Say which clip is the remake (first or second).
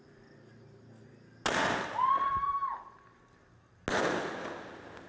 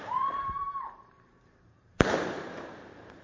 second